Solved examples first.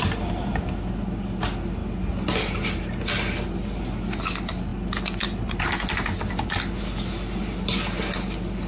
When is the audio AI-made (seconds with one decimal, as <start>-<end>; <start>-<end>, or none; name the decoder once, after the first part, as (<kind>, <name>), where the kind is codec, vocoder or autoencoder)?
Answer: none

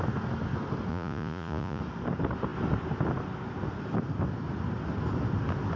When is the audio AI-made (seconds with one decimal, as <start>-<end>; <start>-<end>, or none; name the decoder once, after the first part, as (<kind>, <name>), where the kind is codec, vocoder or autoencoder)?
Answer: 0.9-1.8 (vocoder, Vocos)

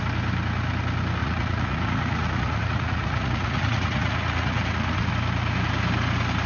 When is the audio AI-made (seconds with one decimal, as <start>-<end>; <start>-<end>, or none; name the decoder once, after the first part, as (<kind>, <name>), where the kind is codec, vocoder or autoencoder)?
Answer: 1.2-5.1 (vocoder, Vocos)

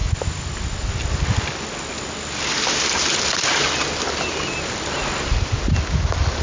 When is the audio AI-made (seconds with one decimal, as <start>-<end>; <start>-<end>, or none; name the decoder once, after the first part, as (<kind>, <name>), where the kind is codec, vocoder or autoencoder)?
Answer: none

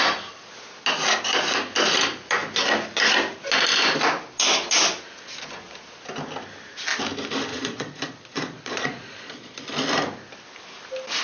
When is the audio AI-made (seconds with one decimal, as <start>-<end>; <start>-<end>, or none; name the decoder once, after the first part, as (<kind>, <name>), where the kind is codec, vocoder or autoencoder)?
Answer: 7.5-9.6 (vocoder, Vocos)